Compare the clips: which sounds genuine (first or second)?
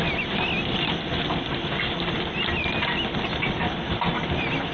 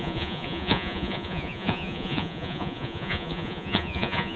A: first